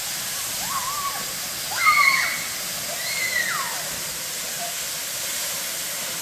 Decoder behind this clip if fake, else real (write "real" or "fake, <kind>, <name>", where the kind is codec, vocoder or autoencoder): real